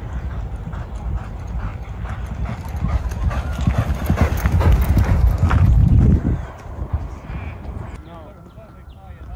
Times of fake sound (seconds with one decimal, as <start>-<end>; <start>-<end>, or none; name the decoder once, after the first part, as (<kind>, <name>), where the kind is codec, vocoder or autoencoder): 1.7-2.2 (vocoder, BigVGAN v2); 5.8-7.1